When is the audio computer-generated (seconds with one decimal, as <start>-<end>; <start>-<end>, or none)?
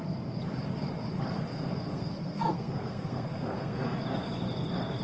1.5-4.0